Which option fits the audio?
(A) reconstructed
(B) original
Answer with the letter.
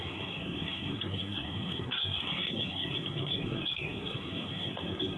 A